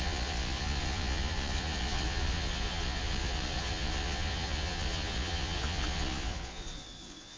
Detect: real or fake fake